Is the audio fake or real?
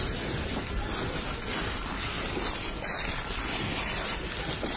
real